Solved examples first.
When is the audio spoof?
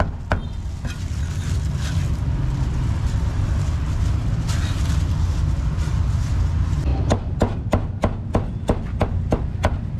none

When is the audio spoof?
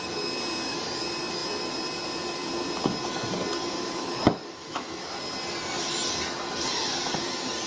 3.6-5.2